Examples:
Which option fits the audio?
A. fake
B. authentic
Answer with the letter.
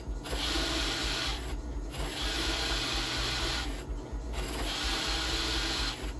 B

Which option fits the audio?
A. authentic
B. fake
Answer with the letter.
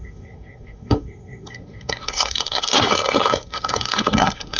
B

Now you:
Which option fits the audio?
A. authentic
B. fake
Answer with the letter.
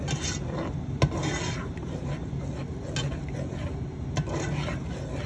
A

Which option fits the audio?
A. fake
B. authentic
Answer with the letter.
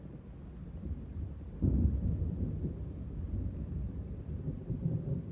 B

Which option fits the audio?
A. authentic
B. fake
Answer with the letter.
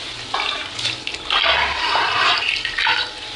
A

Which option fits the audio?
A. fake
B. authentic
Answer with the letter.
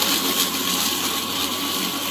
B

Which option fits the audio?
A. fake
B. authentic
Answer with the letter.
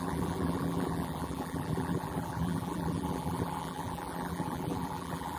A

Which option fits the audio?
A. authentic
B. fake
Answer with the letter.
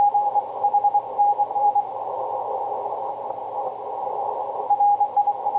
A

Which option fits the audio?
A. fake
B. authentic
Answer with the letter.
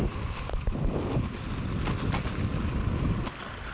B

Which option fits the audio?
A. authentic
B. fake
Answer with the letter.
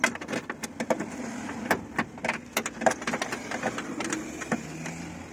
A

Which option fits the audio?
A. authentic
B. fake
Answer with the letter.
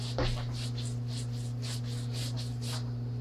A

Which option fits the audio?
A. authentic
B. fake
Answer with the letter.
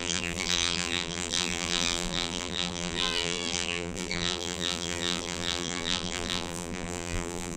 B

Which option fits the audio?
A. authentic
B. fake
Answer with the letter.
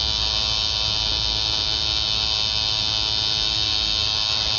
A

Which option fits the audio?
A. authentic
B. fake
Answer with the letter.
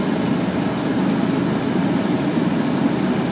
A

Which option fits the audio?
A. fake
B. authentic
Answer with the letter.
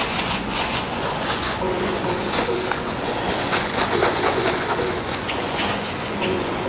A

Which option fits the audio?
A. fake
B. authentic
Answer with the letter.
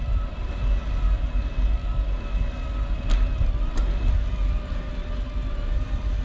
B